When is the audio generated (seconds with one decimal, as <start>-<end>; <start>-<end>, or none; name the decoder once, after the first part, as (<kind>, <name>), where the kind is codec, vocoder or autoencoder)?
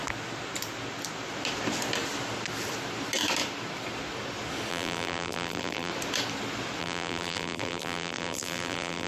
4.7-5.9 (vocoder, BigVGAN v2); 6.8-9.1